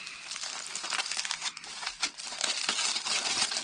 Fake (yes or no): no